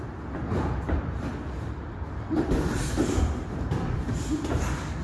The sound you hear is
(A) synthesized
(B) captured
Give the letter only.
B